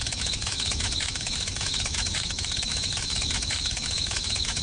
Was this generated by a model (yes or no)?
yes